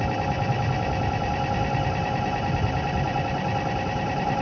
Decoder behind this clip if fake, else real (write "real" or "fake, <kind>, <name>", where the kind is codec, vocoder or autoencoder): fake, vocoder, BigVGAN v2